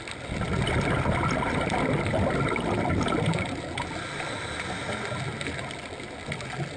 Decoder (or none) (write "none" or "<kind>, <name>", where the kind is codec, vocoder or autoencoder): none